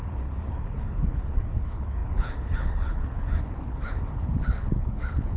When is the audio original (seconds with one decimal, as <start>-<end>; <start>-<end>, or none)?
none